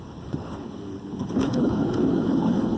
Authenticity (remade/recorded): remade